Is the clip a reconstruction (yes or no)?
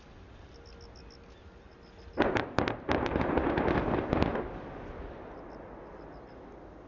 no